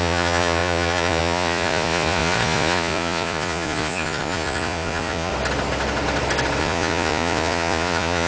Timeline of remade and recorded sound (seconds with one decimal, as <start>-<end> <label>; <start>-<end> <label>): 0.0-5.3 remade; 5.3-6.6 recorded; 6.6-8.3 remade